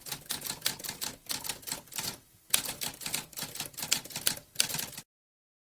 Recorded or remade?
recorded